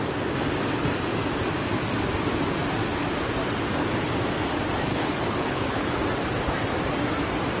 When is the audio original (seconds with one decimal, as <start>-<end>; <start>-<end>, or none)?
0.0-4.9; 6.0-7.6